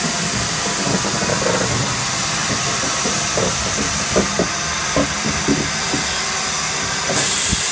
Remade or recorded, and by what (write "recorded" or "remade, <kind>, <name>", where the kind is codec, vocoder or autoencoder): recorded